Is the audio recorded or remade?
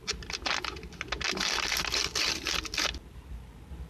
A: recorded